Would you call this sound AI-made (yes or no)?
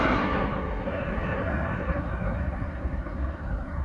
yes